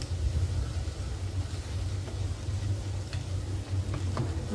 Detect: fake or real real